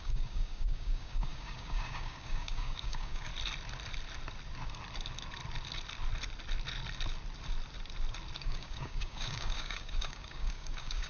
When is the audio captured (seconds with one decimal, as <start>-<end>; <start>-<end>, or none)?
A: 3.3-8.4